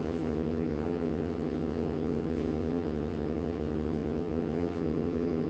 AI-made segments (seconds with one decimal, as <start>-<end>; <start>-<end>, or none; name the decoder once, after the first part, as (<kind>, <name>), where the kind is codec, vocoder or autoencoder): 0.0-5.5 (vocoder, HiFi-GAN)